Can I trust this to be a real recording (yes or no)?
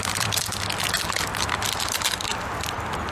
no